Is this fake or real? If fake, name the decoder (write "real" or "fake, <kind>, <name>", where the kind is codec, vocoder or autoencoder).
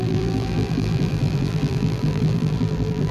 fake, vocoder, BigVGAN v2